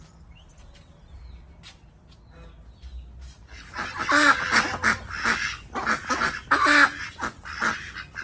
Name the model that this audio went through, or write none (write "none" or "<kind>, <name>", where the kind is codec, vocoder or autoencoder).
none